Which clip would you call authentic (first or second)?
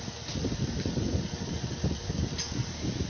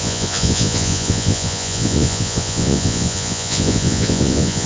first